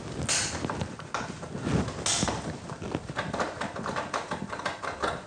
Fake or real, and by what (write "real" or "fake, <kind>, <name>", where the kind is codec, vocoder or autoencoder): real